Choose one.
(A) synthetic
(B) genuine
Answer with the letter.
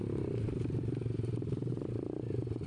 B